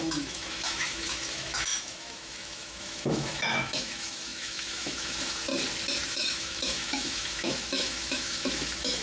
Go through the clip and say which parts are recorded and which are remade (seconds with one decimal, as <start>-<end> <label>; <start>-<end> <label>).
0.0-5.5 remade; 5.5-6.1 recorded; 6.1-9.0 remade